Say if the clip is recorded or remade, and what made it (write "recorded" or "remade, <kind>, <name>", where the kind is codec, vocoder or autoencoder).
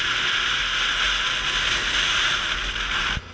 recorded